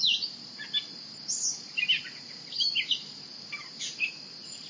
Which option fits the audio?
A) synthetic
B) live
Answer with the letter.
B